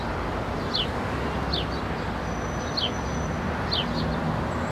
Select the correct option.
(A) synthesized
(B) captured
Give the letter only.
B